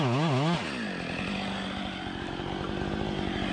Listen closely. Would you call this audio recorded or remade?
recorded